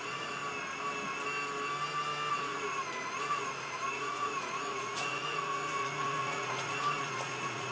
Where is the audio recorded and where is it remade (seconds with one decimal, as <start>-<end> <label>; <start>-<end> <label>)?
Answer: 0.0-0.4 remade; 0.4-2.3 recorded; 2.3-7.7 remade